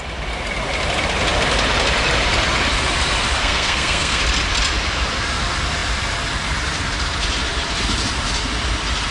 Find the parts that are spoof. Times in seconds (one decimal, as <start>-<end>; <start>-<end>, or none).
3.4-4.2